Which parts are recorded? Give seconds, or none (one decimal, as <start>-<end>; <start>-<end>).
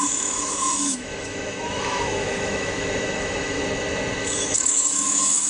3.6-4.2